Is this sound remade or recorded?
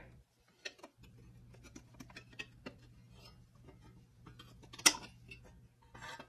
recorded